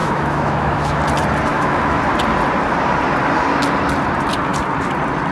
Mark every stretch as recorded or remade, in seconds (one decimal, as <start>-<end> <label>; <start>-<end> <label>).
0.0-1.0 remade; 1.0-1.5 recorded; 1.5-2.0 remade; 2.0-5.3 recorded